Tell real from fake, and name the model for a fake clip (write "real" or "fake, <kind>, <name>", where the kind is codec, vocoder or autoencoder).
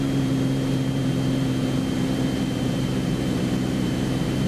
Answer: fake, vocoder, BigVGAN v2